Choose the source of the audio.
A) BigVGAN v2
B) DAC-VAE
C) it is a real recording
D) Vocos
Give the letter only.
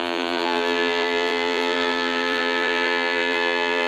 A